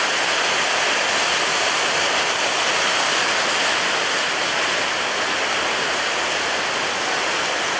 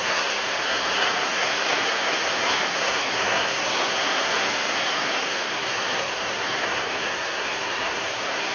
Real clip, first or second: first